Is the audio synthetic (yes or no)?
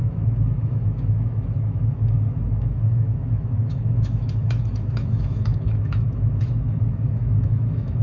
yes